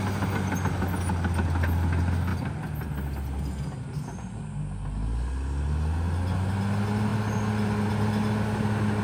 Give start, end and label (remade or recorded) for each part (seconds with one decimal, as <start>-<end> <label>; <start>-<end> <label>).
0.0-9.0 recorded